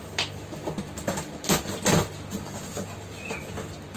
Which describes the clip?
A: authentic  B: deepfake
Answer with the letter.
A